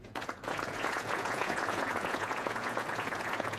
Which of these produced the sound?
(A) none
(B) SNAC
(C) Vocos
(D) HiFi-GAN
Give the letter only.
C